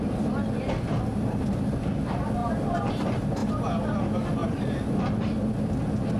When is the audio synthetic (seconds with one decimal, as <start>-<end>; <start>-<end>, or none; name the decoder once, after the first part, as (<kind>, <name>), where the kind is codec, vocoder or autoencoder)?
2.4-2.9 (vocoder, BigVGAN v2); 4.4-5.0